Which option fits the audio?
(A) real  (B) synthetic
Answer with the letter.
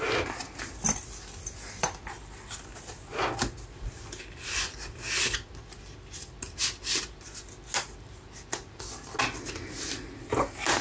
A